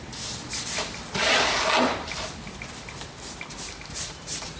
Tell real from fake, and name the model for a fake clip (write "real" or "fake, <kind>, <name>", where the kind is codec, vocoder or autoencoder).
real